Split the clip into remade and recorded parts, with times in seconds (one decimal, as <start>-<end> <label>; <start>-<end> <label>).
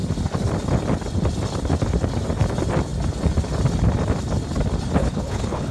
0.0-5.0 recorded; 5.0-5.7 remade